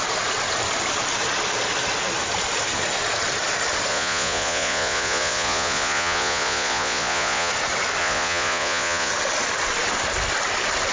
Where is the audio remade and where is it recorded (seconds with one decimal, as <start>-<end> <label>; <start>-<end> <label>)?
0.0-3.9 recorded; 3.9-7.5 remade; 7.5-8.0 recorded; 8.0-9.1 remade; 9.1-10.9 recorded